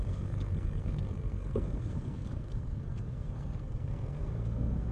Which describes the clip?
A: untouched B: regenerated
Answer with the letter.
B